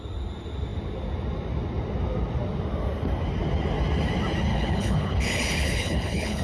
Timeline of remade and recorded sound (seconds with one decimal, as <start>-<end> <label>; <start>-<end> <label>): 0.0-4.5 recorded; 4.5-6.4 remade